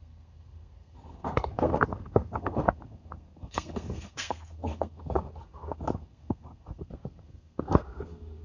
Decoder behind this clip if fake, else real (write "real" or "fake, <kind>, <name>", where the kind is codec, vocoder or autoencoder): fake, codec, SNAC